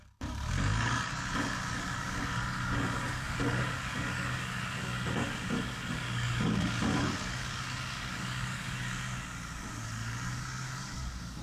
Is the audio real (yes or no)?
no